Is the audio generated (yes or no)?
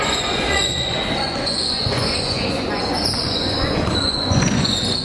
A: yes